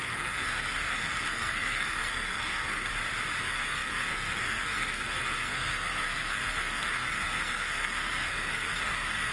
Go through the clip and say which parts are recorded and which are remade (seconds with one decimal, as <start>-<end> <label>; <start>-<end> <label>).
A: 0.0-2.9 remade; 2.9-3.4 recorded; 3.4-9.3 remade